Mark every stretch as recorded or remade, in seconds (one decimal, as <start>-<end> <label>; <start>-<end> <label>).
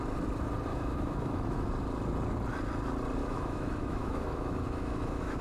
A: 0.0-0.7 recorded; 0.7-1.7 remade; 1.7-3.2 recorded; 3.2-5.4 remade